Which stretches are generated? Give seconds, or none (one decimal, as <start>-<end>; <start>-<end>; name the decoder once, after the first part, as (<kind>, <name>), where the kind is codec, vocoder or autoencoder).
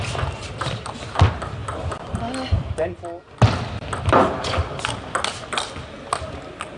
none